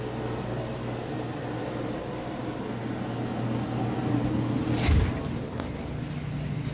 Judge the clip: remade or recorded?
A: recorded